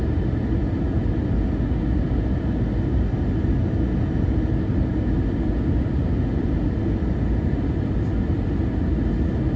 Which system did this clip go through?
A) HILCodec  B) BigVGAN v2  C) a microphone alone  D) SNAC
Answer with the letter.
C